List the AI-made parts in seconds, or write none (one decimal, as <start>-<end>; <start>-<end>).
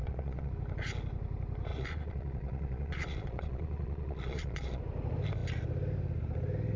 0.0-0.5; 1.7-4.8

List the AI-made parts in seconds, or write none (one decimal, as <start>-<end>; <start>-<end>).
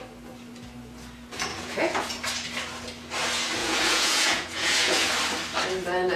1.5-2.1; 3.6-5.1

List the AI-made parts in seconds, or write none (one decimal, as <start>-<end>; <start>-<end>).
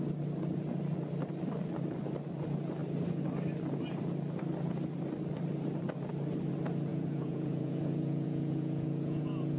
6.9-9.6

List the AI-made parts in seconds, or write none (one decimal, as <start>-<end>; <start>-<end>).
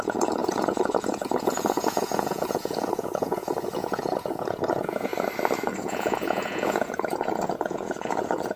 0.0-5.1; 5.8-8.6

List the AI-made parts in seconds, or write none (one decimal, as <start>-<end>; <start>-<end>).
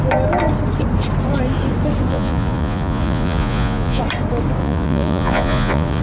2.1-4.0; 4.6-6.0